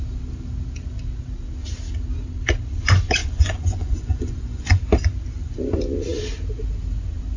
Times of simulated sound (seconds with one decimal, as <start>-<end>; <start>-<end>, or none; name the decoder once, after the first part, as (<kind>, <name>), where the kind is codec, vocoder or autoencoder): 3.2-4.8 (vocoder, Vocos)